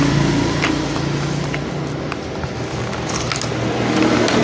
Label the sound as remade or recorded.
recorded